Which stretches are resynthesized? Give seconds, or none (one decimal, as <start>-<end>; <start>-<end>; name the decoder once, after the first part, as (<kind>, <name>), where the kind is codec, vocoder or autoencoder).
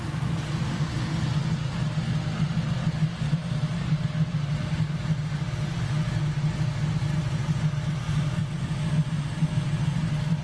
none